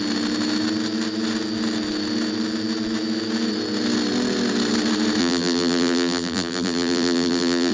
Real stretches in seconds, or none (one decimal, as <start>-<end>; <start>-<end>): 0.0-5.2